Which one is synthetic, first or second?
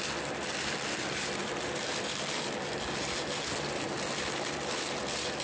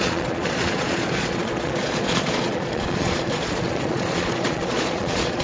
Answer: second